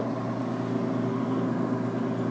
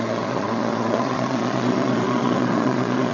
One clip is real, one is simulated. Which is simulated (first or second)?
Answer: second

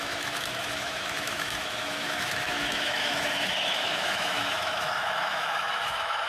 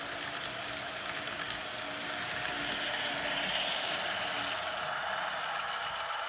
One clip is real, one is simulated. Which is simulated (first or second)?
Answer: first